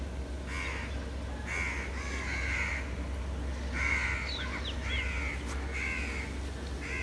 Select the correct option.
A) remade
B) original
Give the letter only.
B